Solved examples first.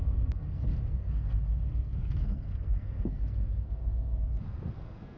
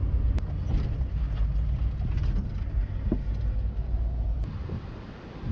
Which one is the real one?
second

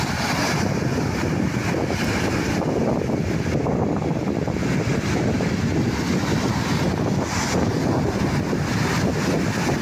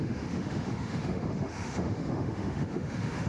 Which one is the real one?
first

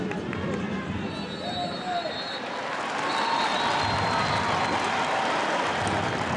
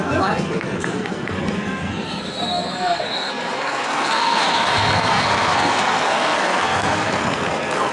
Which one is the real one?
first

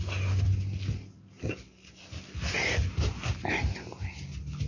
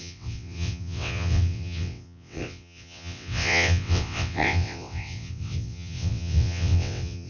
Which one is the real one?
first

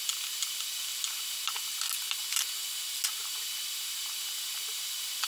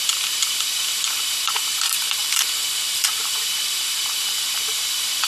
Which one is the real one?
first